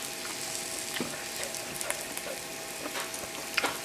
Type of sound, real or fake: real